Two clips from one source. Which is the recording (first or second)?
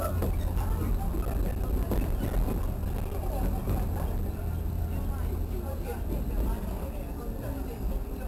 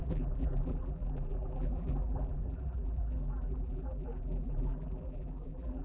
first